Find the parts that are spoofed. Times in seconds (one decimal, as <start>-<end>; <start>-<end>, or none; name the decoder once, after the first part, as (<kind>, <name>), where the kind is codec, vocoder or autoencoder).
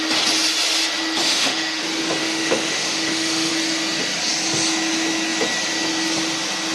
1.2-1.8 (autoencoder, DAC-VAE); 2.2-3.5